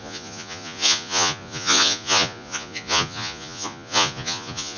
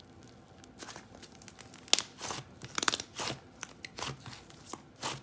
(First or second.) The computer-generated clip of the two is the first